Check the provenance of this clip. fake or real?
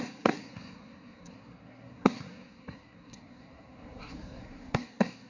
fake